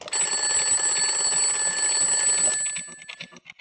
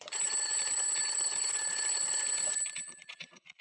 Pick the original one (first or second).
first